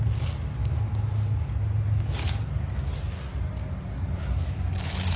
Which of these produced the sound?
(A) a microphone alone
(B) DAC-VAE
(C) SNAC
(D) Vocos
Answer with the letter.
A